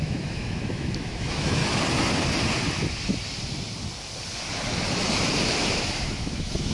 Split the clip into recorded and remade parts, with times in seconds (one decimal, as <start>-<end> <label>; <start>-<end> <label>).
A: 0.0-1.6 remade; 1.6-5.6 recorded; 5.6-6.7 remade